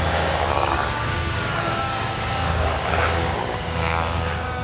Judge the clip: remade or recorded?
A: remade